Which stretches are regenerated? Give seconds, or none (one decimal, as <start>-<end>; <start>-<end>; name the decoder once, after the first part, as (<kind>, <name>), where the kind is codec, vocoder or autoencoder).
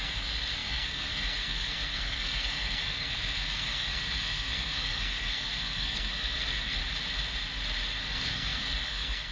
0.0-6.8 (codec, SNAC); 8.0-9.3